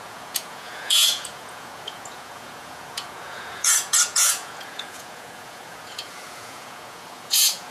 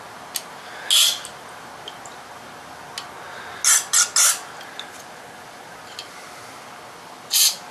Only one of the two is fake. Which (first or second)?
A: first